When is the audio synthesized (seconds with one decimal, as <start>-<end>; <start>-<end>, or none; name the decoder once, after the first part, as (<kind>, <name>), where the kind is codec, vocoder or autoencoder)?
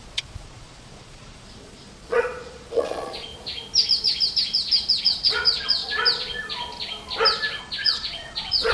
0.0-3.3 (vocoder, Vocos); 5.0-5.8; 7.6-8.7